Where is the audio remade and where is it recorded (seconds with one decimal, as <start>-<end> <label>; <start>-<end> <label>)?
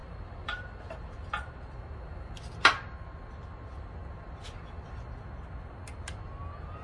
0.0-1.5 remade; 1.5-6.8 recorded